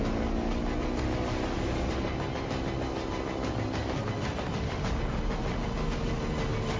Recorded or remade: recorded